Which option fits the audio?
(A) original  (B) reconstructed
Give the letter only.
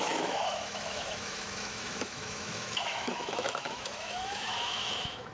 B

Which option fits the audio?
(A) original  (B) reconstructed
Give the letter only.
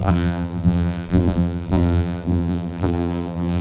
B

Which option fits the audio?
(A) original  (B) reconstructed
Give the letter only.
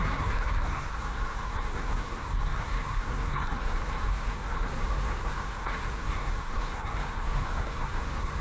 B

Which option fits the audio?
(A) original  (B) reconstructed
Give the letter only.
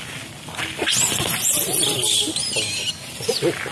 A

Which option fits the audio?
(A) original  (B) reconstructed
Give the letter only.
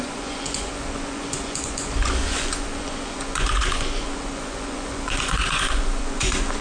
B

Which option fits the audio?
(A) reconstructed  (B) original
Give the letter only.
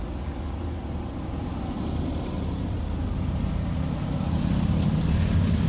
B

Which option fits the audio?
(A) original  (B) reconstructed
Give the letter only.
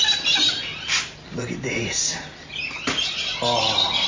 A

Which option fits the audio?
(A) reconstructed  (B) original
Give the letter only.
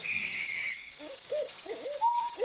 A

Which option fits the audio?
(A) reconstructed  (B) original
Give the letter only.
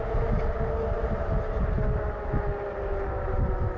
B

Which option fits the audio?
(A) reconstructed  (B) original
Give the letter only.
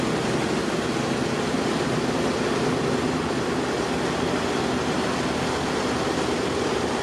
B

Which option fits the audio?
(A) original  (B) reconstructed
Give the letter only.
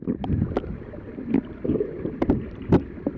A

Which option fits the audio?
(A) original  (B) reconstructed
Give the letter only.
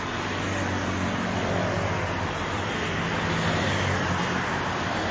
A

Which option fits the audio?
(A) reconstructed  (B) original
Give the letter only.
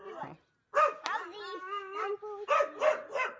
B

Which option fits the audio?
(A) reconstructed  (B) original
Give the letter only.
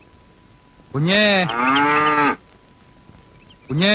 B